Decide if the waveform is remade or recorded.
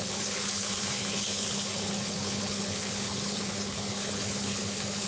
remade